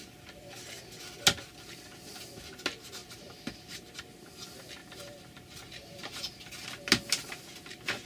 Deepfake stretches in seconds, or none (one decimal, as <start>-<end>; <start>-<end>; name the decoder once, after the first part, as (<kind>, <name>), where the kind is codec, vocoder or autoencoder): 3.0-4.0 (vocoder, BigVGAN v2); 4.8-6.7